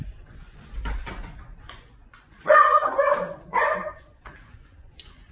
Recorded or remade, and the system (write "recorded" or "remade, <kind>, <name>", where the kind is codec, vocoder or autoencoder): remade, vocoder, Vocos